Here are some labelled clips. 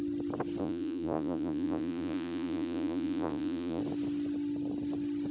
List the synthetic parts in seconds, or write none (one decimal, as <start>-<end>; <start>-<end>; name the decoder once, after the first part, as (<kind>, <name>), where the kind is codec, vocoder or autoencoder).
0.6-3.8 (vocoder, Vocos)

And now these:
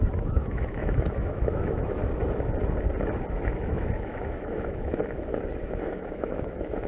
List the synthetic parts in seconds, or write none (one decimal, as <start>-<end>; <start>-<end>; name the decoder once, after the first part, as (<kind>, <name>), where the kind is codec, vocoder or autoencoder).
0.0-2.0 (autoencoder, DAC-VAE); 3.3-6.9

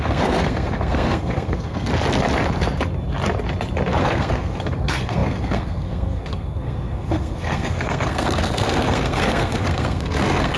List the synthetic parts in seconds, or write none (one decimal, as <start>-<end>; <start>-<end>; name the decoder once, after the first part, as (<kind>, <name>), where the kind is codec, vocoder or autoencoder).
0.0-1.9 (codec, SNAC); 4.0-10.6

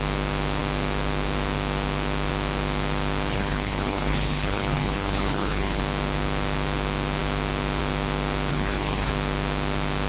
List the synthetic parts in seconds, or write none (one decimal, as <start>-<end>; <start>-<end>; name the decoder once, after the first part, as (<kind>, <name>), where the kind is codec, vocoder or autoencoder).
3.3-5.8 (codec, HILCodec); 8.5-9.1

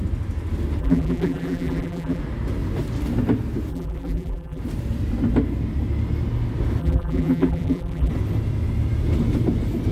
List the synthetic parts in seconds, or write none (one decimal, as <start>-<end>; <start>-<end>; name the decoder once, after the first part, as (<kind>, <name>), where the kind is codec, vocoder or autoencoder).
0.8-2.2 (vocoder, BigVGAN v2); 3.7-4.6; 6.8-8.1